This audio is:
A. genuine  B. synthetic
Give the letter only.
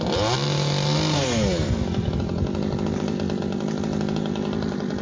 A